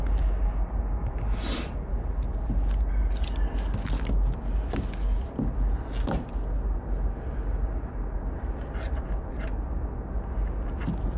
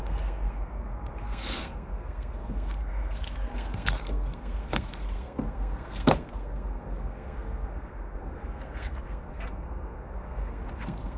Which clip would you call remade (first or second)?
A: second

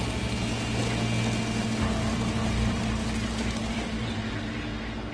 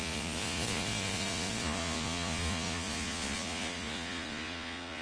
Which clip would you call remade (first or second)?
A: second